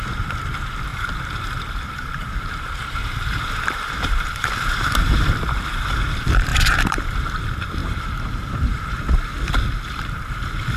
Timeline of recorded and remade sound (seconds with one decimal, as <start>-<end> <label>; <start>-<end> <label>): 0.0-0.9 recorded; 0.9-5.2 remade; 5.2-6.5 recorded; 6.5-7.3 remade; 7.3-7.8 recorded; 7.8-9.0 remade; 9.0-10.8 recorded